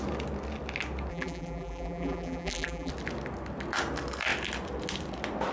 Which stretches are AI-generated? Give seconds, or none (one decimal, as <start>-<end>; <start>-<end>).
1.1-2.9